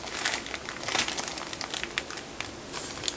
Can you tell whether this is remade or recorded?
recorded